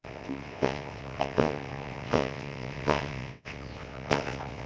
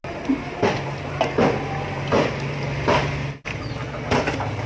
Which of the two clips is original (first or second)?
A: second